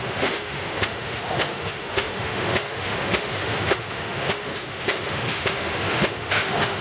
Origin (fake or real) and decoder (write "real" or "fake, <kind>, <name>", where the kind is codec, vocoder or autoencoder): fake, autoencoder, DAC-VAE